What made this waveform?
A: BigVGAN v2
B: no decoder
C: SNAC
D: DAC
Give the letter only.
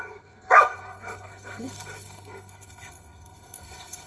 C